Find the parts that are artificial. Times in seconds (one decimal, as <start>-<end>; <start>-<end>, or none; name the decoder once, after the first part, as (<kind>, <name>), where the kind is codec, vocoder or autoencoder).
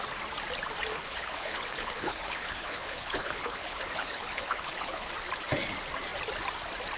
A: 0.9-5.1 (codec, HILCodec)